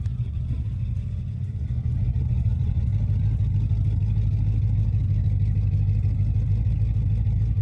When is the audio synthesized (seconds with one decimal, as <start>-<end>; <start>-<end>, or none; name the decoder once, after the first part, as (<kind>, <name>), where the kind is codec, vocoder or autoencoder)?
0.0-2.9 (vocoder, Vocos)